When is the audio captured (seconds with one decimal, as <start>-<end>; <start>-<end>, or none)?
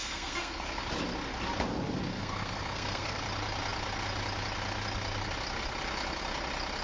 0.8-2.1; 3.2-6.8